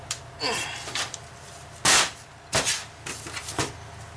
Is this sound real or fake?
real